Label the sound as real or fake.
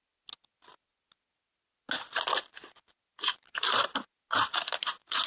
real